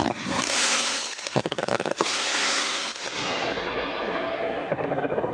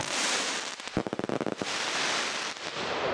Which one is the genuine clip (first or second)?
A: second